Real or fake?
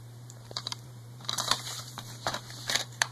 fake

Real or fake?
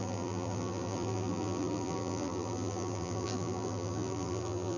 fake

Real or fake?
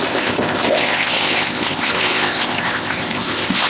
fake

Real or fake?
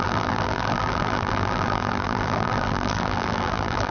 fake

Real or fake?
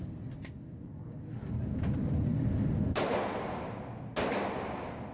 real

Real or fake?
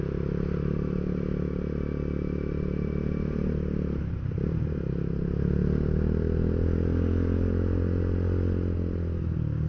real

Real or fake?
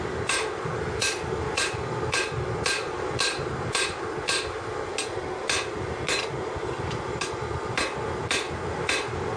real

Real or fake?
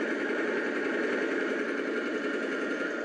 fake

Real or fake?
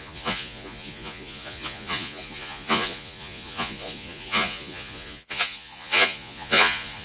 fake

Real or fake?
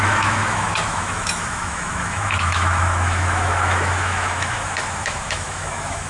fake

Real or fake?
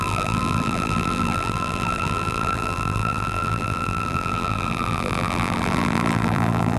fake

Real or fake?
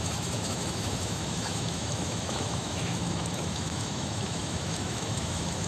fake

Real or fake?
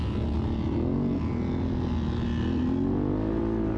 real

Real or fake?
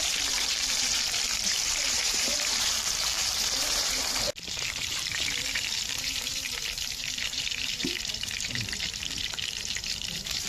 fake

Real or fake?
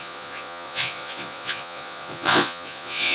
fake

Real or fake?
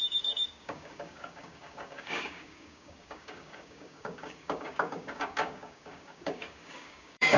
fake